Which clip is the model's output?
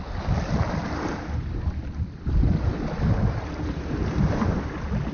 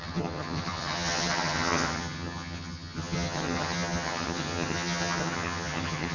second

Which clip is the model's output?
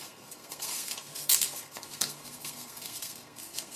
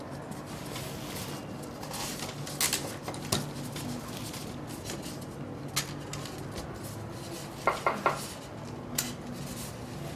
first